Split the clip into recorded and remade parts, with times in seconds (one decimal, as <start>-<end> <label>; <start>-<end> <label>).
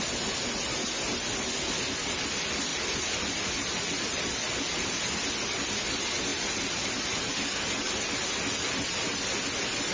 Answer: 0.0-9.9 recorded